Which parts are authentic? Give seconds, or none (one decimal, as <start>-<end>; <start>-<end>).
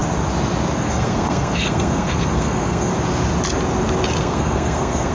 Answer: 0.0-0.8; 2.9-4.2